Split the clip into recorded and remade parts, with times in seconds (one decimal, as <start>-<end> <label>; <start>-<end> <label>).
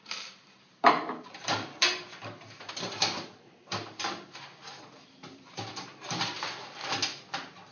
0.0-7.0 remade; 7.0-7.7 recorded